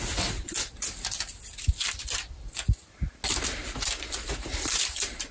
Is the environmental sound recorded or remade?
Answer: recorded